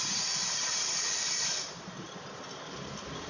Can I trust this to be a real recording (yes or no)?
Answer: yes